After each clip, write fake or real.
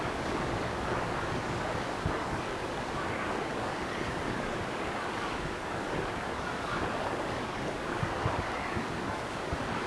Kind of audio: fake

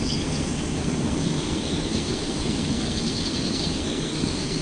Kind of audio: fake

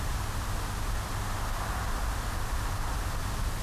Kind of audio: real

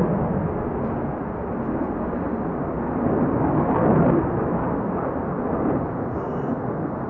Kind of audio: real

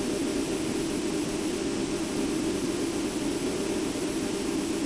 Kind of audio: real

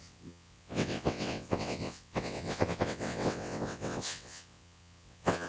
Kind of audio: fake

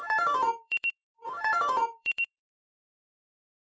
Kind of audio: fake